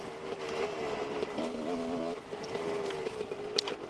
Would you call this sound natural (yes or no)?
yes